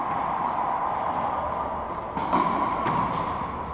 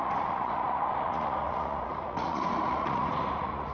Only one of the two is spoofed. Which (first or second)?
second